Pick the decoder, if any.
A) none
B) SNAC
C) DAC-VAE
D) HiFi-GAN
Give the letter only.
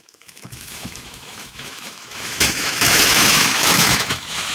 C